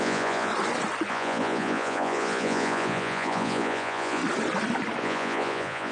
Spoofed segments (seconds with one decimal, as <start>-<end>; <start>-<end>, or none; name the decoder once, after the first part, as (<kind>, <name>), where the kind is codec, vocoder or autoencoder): 0.0-0.5 (vocoder, Vocos); 1.1-4.2; 5.0-5.9